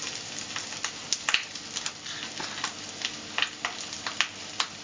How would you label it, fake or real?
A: real